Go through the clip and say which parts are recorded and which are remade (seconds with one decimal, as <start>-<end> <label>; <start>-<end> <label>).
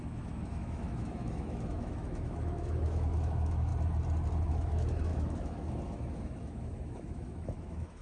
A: 0.0-3.7 remade; 3.7-4.5 recorded; 4.5-8.0 remade